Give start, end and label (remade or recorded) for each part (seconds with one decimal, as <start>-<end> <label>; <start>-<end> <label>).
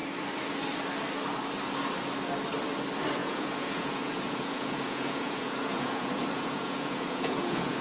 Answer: 0.0-3.2 recorded; 3.2-7.8 remade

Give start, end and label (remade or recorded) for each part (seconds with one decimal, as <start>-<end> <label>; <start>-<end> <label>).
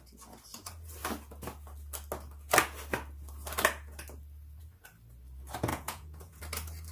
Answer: 0.0-5.7 recorded; 5.7-6.4 remade; 6.4-6.9 recorded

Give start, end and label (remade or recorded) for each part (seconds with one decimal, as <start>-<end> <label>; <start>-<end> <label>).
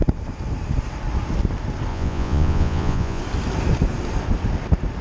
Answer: 0.0-1.9 recorded; 1.9-3.2 remade; 3.2-5.0 recorded